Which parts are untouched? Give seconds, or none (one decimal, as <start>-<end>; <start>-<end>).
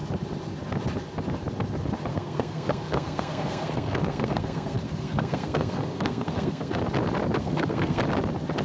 0.0-2.1; 6.8-7.4; 8.0-8.6